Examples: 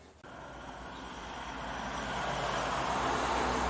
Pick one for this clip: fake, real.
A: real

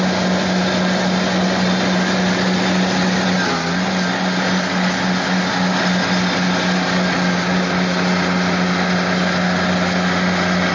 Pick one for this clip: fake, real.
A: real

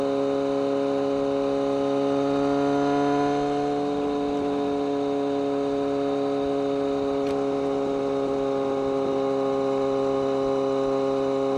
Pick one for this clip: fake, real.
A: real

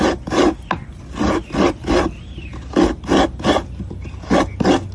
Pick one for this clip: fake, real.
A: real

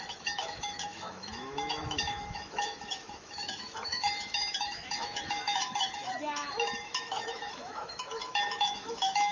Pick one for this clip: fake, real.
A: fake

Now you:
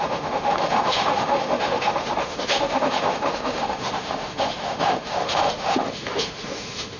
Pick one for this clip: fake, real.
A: fake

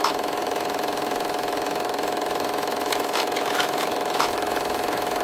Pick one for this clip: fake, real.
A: fake